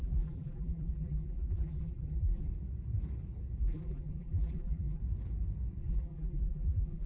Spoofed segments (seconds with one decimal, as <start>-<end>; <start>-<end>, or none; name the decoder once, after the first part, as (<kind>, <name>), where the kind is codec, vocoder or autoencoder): 0.0-2.5 (vocoder, BigVGAN v2); 3.6-5.0; 5.8-7.1